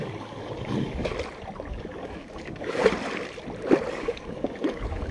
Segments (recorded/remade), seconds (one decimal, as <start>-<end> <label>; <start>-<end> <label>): 0.0-1.1 remade; 1.1-1.7 recorded; 1.7-2.8 remade; 2.8-3.9 recorded; 3.9-5.1 remade